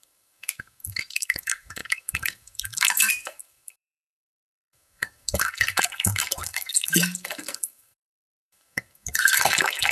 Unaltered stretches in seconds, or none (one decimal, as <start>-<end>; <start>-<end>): none